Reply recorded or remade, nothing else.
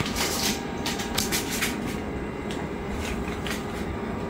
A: remade